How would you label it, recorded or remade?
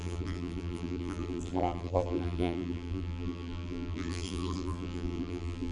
remade